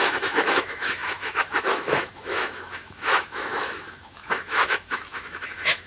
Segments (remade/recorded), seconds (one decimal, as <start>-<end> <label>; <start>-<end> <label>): 0.0-5.9 remade